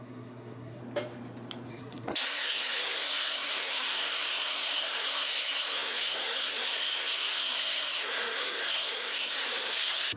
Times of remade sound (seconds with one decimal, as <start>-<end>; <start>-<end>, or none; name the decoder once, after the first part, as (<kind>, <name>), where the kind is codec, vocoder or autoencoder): 0.0-0.8 (codec, SNAC); 1.7-10.2